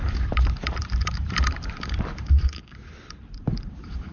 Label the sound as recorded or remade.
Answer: remade